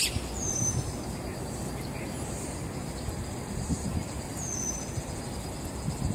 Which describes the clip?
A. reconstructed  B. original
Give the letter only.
B